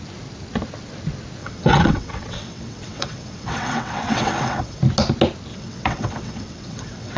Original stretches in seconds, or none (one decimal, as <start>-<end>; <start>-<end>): 0.0-1.4; 4.8-5.5